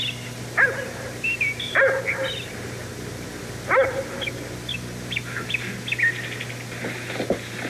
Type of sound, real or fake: real